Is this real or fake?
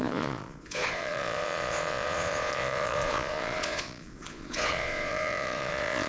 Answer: fake